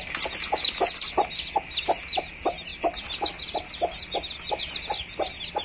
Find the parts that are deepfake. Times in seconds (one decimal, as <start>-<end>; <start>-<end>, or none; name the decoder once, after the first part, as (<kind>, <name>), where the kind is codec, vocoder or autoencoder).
none